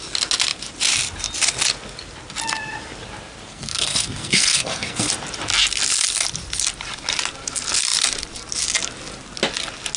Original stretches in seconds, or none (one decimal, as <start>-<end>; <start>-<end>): 0.0-3.5; 5.1-10.0